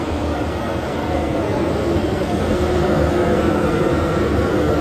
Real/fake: fake